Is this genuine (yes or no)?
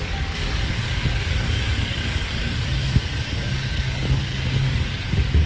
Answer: no